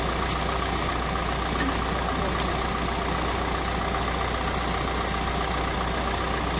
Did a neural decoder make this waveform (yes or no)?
no